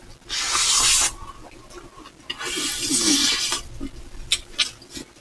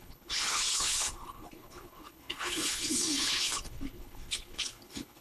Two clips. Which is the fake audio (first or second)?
second